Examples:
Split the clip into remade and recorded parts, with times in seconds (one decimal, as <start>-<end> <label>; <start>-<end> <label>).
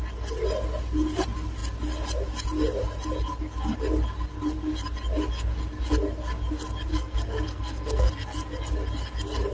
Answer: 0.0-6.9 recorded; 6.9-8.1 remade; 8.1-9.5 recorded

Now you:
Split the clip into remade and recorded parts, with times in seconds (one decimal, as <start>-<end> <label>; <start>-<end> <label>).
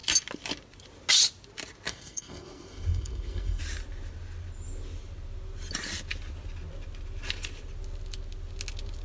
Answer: 0.0-1.9 recorded; 1.9-3.6 remade; 3.6-9.0 recorded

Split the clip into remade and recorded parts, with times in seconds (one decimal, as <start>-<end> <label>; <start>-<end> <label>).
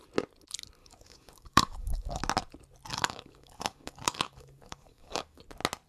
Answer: 0.0-0.8 recorded; 0.8-2.2 remade; 2.2-2.9 recorded; 2.9-5.4 remade; 5.4-5.9 recorded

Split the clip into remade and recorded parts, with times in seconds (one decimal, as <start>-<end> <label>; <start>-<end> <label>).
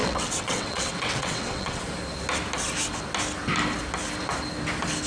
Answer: 0.0-1.8 remade; 1.8-5.1 recorded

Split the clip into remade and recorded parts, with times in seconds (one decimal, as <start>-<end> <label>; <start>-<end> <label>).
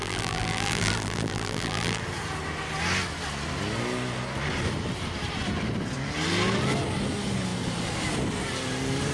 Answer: 0.0-2.0 remade; 2.0-9.1 recorded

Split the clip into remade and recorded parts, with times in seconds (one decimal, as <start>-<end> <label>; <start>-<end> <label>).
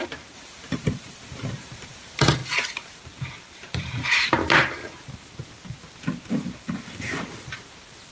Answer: 0.0-2.4 remade; 2.4-3.0 recorded; 3.0-4.4 remade; 4.4-6.3 recorded; 6.3-8.1 remade